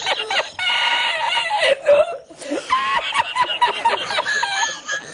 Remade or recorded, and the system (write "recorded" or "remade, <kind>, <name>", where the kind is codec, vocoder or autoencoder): remade, vocoder, BigVGAN v2